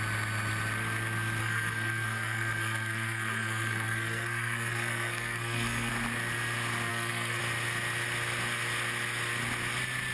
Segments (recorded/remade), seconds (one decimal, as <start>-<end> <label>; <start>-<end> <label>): 0.0-1.4 recorded; 1.4-5.9 remade; 5.9-6.9 recorded; 6.9-7.4 remade; 7.4-10.1 recorded